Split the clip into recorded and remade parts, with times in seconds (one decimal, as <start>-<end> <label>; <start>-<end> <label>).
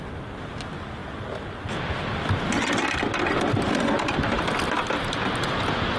0.0-6.0 recorded